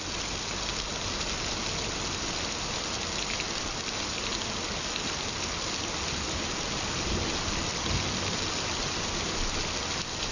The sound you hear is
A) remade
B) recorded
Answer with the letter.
B